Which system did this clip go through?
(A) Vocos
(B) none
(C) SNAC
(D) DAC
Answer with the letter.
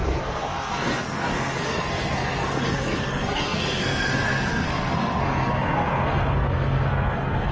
C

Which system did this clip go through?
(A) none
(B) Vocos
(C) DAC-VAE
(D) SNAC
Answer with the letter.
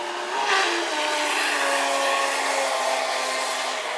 A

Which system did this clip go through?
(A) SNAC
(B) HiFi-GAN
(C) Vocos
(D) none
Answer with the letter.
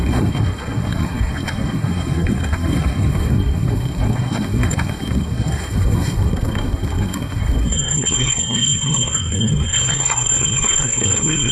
A